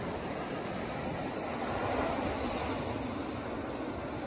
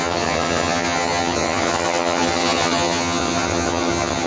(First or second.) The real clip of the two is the first